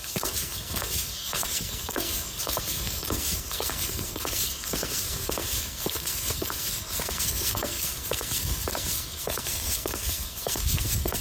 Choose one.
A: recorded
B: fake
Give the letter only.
B